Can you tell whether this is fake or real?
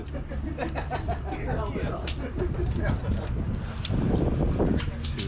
real